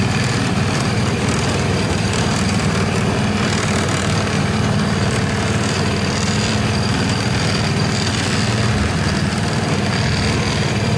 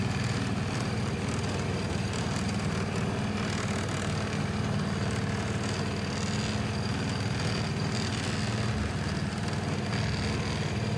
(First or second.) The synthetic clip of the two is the first